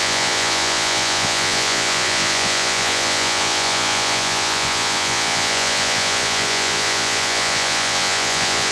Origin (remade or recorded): remade